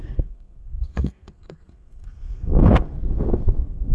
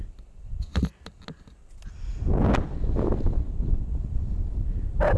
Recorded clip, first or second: second